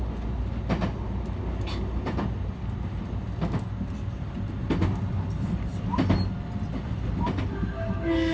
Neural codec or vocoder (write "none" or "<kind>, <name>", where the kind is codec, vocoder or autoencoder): none